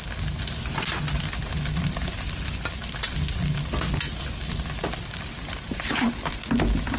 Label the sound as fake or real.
real